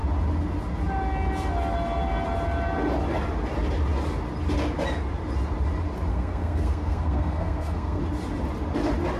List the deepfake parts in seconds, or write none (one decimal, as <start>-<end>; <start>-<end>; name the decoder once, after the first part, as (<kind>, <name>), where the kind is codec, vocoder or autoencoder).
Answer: 6.1-8.0 (codec, SNAC)